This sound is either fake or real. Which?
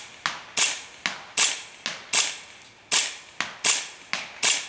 real